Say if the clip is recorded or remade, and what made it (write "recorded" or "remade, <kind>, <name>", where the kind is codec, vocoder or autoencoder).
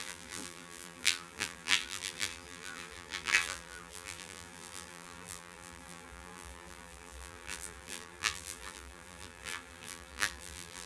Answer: remade, vocoder, BigVGAN v2